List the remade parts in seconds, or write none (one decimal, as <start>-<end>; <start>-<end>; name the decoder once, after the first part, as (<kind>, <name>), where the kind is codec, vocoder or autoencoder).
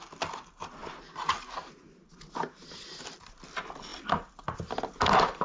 none